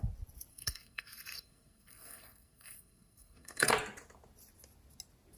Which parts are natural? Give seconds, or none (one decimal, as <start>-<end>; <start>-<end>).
0.0-0.5; 3.7-5.4